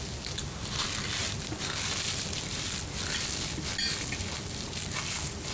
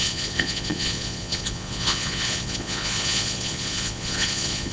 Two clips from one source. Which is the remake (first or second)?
second